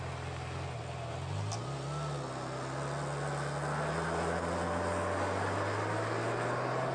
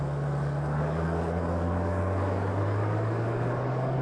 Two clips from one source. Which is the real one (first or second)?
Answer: first